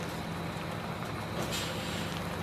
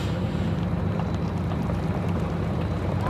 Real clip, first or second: first